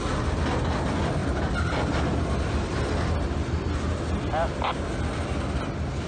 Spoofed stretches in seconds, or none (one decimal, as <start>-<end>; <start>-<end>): none